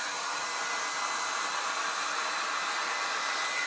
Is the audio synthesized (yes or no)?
no